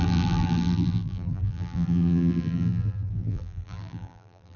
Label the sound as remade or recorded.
remade